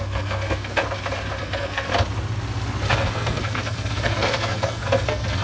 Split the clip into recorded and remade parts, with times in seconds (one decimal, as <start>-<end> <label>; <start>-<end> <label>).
0.0-0.8 remade; 0.8-1.4 recorded; 1.4-1.9 remade; 1.9-2.9 recorded; 2.9-5.4 remade